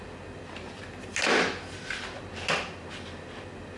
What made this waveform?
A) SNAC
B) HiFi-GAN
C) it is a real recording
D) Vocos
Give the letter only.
C